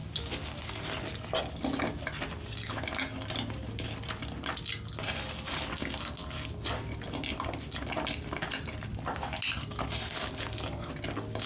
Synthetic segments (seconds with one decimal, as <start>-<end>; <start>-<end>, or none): none